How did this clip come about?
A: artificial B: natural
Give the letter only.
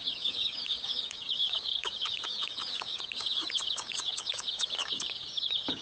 A